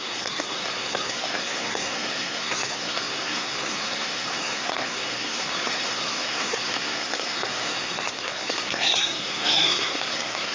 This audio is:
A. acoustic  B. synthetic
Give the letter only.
B